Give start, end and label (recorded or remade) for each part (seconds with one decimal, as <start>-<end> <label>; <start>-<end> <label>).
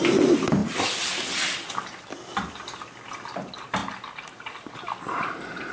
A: 0.0-5.7 recorded